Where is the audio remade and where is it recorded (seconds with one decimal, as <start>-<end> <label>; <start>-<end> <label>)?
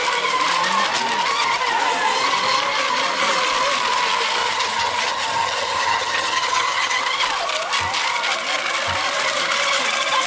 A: 0.0-4.4 recorded; 4.4-7.0 remade; 7.0-10.3 recorded